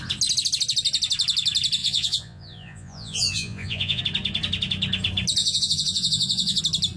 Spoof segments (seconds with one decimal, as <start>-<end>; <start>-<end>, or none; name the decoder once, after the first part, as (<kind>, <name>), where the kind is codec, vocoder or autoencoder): 1.8-4.0 (vocoder, Vocos); 5.4-6.6